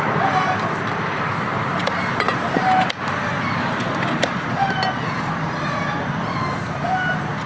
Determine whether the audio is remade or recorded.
recorded